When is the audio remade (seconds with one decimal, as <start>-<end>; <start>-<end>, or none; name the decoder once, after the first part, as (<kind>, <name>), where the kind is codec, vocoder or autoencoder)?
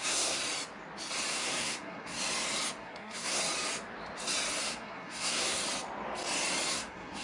0.0-0.4 (codec, SNAC); 1.3-2.2; 2.8-3.4; 4.6-5.6; 6.7-7.2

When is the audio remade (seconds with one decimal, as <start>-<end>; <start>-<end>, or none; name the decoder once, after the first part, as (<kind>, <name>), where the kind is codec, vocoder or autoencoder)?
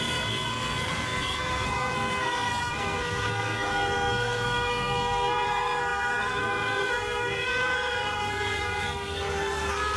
0.0-10.0 (codec, SNAC)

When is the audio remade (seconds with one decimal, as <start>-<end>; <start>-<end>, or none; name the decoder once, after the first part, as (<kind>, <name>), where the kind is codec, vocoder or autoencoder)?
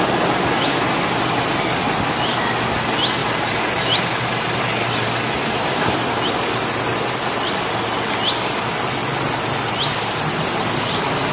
3.2-4.6 (vocoder, BigVGAN v2)